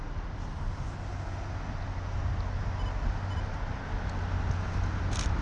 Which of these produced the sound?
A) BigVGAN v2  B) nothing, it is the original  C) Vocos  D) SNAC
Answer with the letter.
B